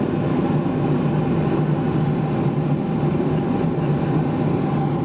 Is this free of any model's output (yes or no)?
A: yes